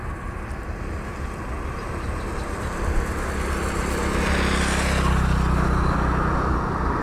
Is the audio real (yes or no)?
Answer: yes